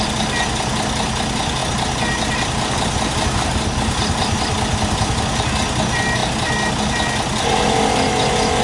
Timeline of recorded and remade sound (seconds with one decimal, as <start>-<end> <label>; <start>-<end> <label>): 0.0-8.6 recorded